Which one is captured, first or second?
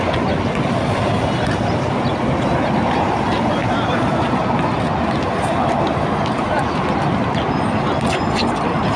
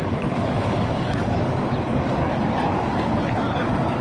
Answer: first